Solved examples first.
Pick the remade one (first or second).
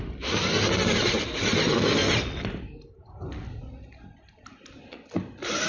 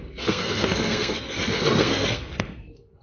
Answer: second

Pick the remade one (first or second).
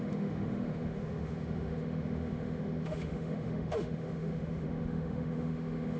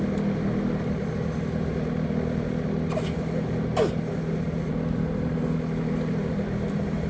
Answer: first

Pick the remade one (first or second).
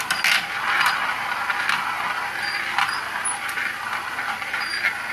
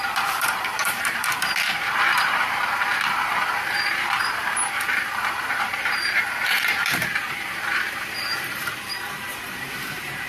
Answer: second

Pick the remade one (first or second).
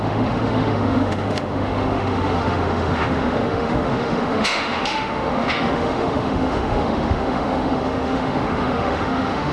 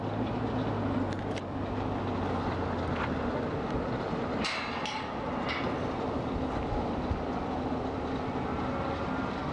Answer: first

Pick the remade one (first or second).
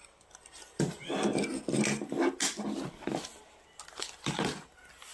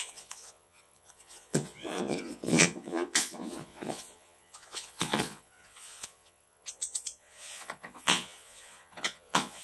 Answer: second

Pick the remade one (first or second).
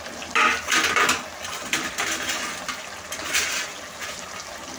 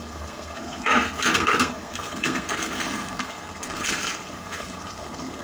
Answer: second